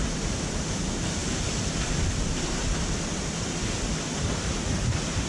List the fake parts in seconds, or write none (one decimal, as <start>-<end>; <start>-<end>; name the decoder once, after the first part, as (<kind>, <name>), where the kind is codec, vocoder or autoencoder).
1.2-1.9 (vocoder, BigVGAN v2)